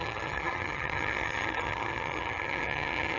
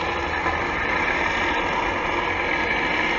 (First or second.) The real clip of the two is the second